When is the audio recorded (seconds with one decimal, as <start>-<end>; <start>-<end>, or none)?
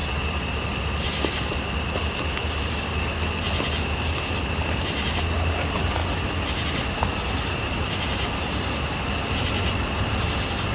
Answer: 0.0-10.7